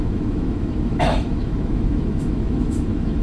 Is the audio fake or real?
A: fake